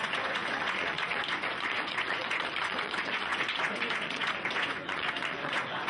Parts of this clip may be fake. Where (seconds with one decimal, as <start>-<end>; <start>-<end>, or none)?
0.0-5.9